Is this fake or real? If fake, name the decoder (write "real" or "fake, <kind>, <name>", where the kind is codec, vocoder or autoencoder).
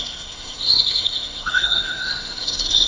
fake, codec, SNAC